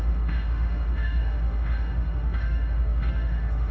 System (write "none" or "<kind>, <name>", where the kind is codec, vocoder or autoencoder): autoencoder, DAC-VAE